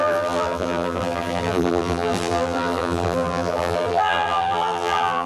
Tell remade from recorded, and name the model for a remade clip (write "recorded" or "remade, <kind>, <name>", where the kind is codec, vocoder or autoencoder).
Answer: remade, vocoder, BigVGAN v2